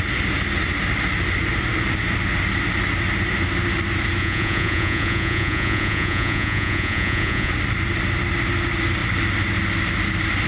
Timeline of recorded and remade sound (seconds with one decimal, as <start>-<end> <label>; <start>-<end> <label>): 0.0-4.2 recorded; 4.2-7.5 remade; 7.5-10.5 recorded